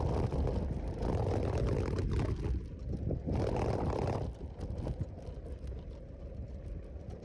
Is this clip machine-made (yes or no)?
no